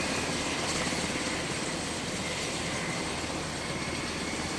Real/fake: real